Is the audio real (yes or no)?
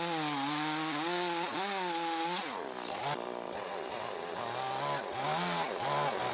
yes